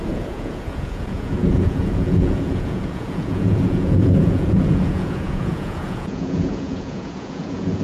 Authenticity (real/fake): fake